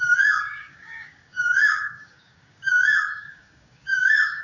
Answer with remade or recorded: remade